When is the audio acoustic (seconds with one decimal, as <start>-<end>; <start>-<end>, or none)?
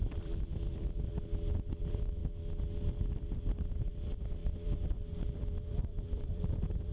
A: 1.1-1.8; 2.2-4.0